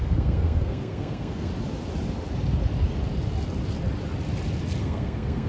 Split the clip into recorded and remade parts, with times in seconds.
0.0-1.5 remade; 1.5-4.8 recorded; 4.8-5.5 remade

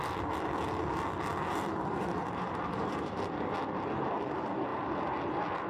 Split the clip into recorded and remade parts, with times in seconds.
0.0-1.7 recorded; 1.7-3.2 remade; 3.2-5.7 recorded

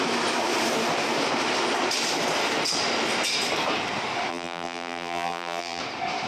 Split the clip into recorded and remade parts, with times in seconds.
0.0-4.3 recorded; 4.3-5.8 remade; 5.8-6.3 recorded

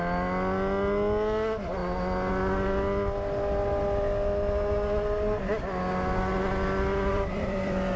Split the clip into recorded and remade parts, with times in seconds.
0.0-7.1 recorded; 7.1-8.0 remade

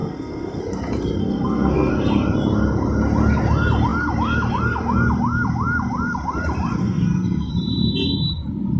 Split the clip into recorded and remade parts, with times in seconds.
0.0-0.6 remade; 0.6-1.2 recorded; 1.2-1.9 remade; 1.9-6.8 recorded; 6.8-7.5 remade; 7.5-8.8 recorded

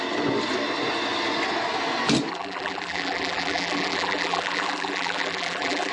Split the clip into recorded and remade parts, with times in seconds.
0.0-2.3 recorded; 2.3-5.9 remade

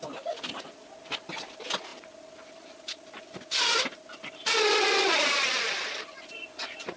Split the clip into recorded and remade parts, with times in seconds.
0.0-7.0 recorded